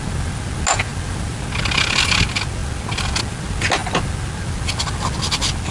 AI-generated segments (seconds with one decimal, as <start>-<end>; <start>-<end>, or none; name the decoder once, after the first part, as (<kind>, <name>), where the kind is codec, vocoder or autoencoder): none